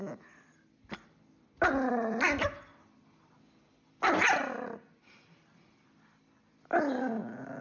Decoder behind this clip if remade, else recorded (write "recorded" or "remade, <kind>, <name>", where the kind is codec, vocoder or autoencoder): recorded